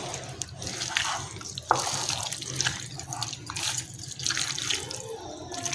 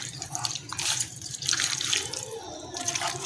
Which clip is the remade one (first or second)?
second